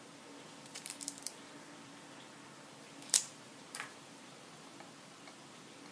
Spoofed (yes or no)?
no